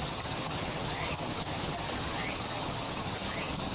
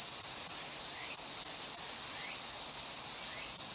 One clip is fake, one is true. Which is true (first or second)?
second